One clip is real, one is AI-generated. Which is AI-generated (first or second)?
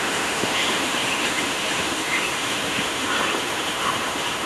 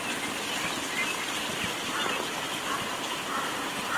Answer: first